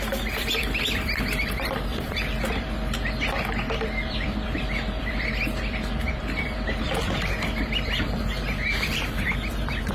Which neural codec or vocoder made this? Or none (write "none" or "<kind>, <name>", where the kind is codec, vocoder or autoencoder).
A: vocoder, BigVGAN v2